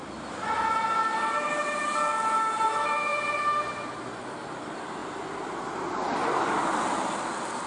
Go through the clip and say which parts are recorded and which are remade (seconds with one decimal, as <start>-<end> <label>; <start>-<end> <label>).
0.0-3.1 recorded; 3.1-4.2 remade; 4.2-7.7 recorded